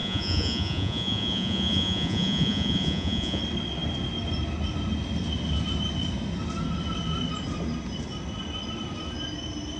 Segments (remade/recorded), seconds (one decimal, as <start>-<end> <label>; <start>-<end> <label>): 0.0-3.4 remade; 3.4-9.8 recorded